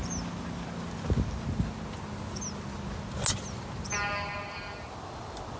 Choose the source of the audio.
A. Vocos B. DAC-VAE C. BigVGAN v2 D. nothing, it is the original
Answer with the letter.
D